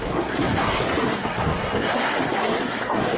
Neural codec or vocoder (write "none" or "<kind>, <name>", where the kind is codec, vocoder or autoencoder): codec, SNAC